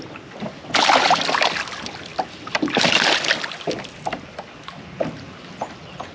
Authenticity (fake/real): real